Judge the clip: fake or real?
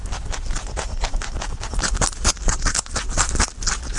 real